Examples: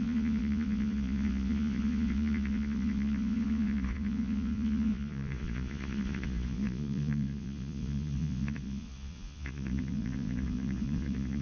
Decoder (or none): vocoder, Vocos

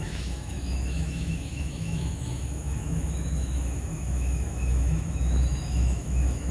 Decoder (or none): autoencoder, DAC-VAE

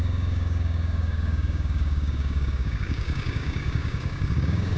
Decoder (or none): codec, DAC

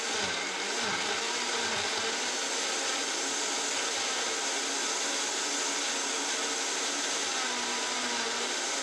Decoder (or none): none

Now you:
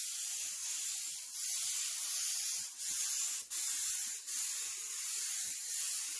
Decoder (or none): none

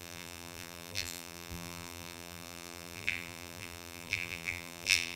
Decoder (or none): vocoder, BigVGAN v2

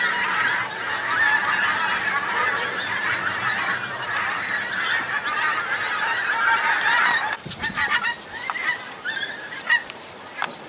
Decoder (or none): none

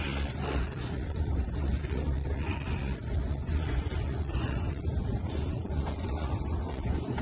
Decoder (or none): vocoder, Vocos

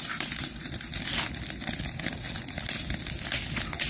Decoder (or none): none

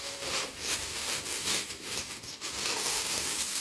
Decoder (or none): codec, DAC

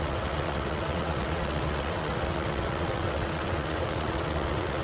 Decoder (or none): vocoder, WaveNeXt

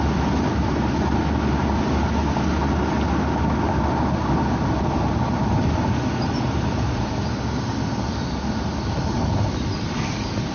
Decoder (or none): none